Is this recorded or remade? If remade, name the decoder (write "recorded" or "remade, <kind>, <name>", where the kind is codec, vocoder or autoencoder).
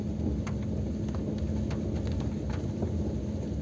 recorded